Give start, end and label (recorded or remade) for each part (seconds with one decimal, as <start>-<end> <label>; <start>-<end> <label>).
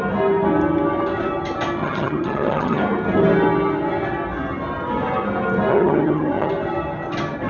0.0-1.8 recorded; 1.8-2.8 remade; 2.8-5.7 recorded; 5.7-6.5 remade; 6.5-7.5 recorded